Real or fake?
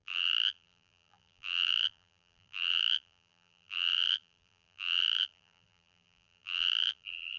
fake